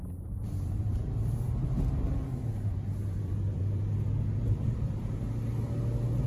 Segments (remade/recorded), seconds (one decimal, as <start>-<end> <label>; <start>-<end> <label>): 0.0-3.8 remade; 3.8-4.4 recorded; 4.4-5.2 remade; 5.2-6.3 recorded